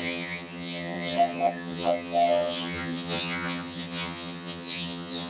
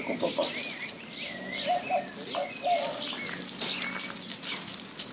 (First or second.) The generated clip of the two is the first